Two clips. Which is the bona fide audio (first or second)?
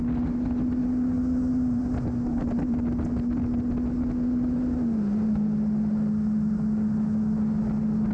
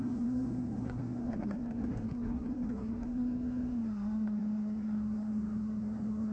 first